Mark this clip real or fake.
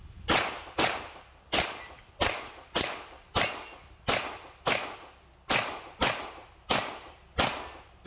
real